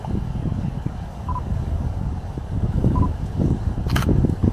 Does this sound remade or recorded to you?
remade